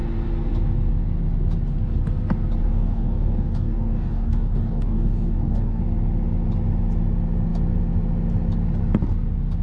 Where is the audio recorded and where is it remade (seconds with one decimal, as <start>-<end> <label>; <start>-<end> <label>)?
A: 0.0-2.6 recorded; 2.6-5.8 remade; 5.8-9.6 recorded